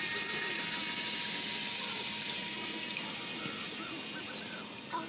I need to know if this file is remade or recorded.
recorded